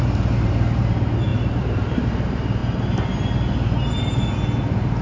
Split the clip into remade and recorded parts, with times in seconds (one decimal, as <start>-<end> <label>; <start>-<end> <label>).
0.0-2.6 remade; 2.6-4.6 recorded; 4.6-5.0 remade